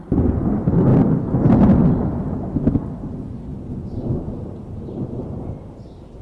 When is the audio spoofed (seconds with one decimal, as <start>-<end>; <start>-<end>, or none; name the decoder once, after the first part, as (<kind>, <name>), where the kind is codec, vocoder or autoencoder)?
3.5-6.2 (vocoder, BigVGAN v2)